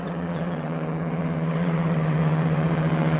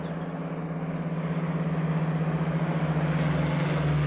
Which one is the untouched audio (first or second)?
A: second